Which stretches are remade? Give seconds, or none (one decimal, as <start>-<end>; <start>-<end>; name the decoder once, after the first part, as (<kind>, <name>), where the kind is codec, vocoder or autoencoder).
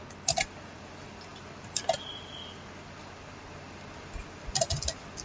none